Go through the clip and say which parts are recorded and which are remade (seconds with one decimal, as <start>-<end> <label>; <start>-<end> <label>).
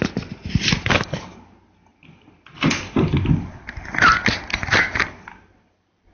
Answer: 0.0-6.1 recorded